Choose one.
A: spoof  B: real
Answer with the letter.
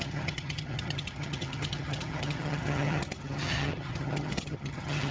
A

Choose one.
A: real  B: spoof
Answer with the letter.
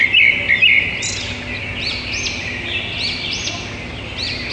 A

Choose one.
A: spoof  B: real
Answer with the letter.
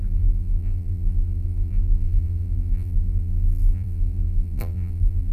A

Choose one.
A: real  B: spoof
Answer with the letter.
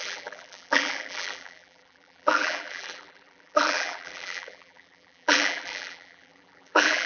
B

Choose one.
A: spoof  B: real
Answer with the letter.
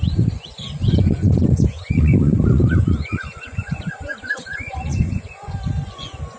A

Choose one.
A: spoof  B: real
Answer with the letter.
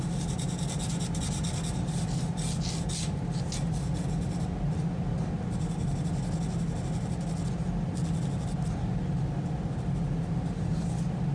B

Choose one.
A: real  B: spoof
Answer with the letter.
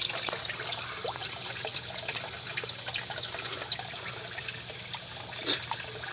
A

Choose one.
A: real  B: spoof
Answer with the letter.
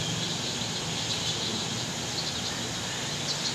A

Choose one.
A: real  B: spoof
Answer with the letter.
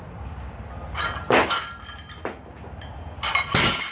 A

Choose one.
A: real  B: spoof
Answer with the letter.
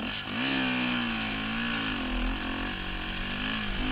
A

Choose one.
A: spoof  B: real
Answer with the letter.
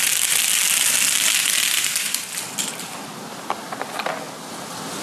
B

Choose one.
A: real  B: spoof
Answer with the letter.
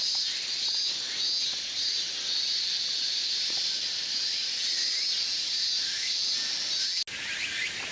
A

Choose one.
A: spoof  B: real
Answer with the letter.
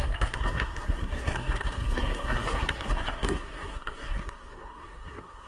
A